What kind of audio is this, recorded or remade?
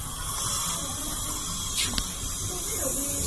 recorded